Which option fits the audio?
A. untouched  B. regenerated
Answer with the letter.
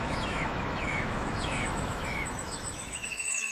B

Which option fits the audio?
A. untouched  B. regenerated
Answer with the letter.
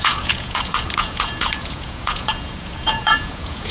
B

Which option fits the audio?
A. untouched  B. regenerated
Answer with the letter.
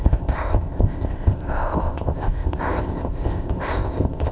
B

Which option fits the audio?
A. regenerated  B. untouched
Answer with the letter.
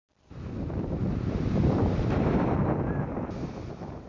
B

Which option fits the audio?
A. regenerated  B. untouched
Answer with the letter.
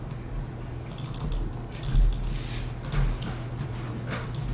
B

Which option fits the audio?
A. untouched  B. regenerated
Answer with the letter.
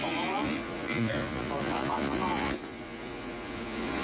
B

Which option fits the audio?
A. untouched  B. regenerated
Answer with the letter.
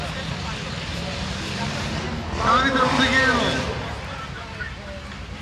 A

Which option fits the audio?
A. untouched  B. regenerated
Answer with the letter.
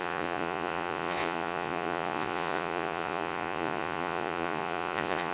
B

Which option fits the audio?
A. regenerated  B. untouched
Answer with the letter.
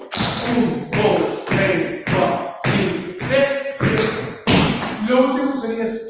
B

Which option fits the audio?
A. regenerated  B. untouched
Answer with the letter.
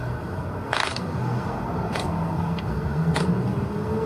A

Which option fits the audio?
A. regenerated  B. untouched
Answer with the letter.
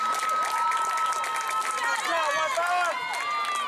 B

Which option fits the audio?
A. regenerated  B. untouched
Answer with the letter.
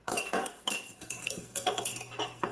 A